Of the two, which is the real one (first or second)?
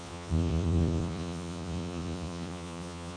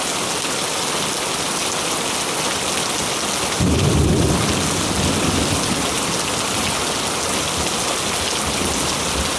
second